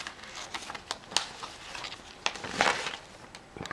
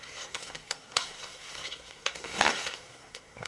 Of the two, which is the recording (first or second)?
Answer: first